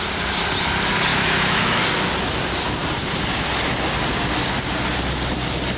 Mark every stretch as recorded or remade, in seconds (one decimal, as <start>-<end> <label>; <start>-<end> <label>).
0.0-1.1 recorded; 1.1-1.8 remade; 1.8-5.8 recorded